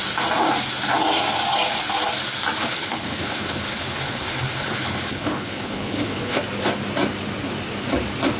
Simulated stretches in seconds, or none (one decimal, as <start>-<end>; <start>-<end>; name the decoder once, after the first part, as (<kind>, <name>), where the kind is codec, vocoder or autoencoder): 2.6-6.4 (codec, HILCodec)